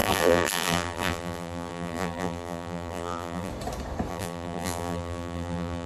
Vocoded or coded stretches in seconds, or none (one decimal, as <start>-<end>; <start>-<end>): 0.0-3.5; 4.1-5.9